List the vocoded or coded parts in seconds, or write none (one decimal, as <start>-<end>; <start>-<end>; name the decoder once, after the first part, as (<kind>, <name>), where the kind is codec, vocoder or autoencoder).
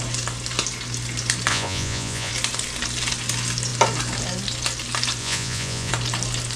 1.5-2.3 (vocoder, Vocos); 5.2-5.9